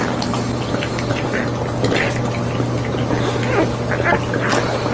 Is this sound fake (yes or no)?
no